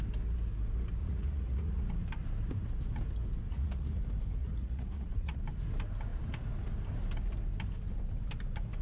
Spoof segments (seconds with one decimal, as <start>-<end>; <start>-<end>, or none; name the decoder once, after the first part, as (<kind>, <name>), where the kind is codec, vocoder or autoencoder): 1.0-1.8 (vocoder, Vocos); 3.5-4.0; 4.4-5.4